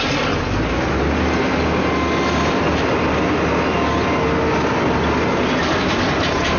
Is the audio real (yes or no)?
yes